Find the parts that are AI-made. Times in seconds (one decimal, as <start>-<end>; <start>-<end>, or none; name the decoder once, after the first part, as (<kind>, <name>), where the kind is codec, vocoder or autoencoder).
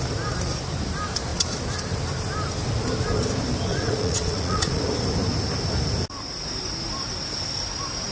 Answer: 3.7-4.8 (vocoder, Vocos)